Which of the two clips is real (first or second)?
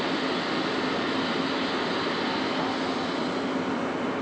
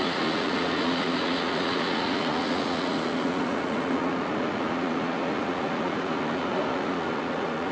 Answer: first